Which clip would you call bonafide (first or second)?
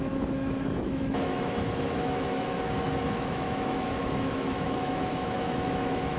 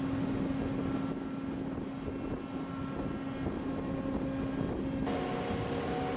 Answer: second